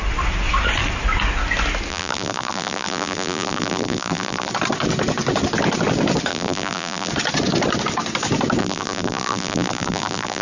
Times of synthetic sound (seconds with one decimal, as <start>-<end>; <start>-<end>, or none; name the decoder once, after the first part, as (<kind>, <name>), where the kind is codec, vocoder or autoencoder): 1.9-4.5 (vocoder, BigVGAN v2); 6.3-7.1; 8.6-10.4